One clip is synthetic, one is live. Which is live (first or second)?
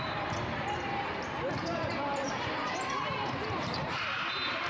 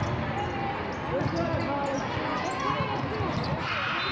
second